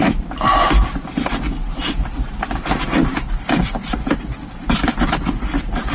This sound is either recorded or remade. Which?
recorded